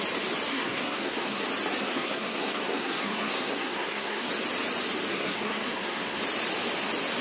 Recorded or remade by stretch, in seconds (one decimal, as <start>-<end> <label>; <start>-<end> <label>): 0.0-0.5 recorded; 0.5-1.4 remade; 1.4-1.8 recorded; 1.8-4.3 remade; 4.3-5.1 recorded; 5.1-6.2 remade; 6.2-7.2 recorded